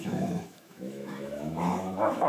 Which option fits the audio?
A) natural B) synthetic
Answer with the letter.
B